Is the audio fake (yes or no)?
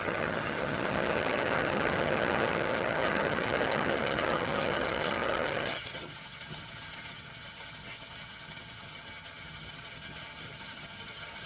yes